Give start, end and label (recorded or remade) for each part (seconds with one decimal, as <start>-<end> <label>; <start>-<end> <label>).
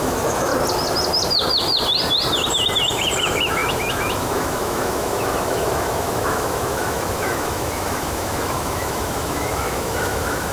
0.0-0.5 remade; 0.5-3.2 recorded; 3.2-10.5 remade